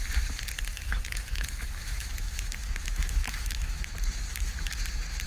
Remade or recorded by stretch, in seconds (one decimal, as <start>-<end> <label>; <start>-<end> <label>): 0.0-0.7 recorded; 0.7-3.9 remade; 3.9-4.3 recorded; 4.3-4.8 remade; 4.8-5.3 recorded